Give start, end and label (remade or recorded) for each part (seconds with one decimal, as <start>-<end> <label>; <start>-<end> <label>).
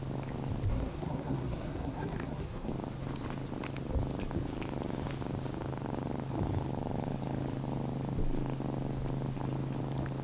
0.0-0.7 recorded; 0.7-2.7 remade; 2.7-10.2 recorded